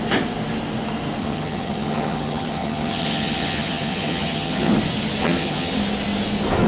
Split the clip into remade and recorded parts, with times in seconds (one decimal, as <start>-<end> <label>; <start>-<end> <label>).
0.0-1.2 recorded; 1.2-4.7 remade; 4.7-5.2 recorded; 5.2-5.7 remade; 5.7-6.7 recorded